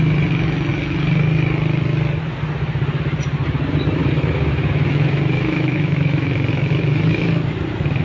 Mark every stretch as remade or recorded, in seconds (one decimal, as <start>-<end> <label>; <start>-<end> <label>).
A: 0.0-4.0 recorded; 4.0-8.0 remade